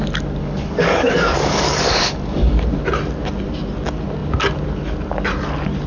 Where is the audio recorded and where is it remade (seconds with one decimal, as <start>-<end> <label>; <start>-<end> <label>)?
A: 0.0-0.4 recorded; 0.4-2.6 remade; 2.6-5.9 recorded